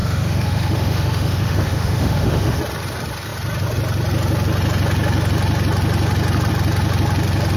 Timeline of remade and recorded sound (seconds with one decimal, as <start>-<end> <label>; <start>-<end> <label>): 0.0-2.6 remade; 2.6-7.6 recorded